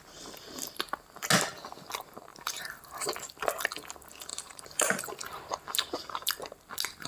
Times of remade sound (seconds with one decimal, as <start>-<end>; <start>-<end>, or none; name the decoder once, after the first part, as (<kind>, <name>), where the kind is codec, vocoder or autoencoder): 2.3-3.1 (vocoder, BigVGAN v2); 4.3-5.0